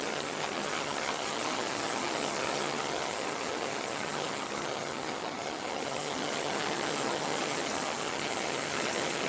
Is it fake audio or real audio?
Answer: fake